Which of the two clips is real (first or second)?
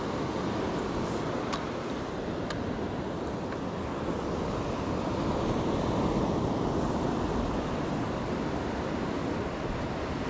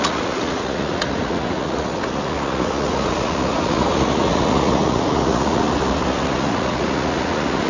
first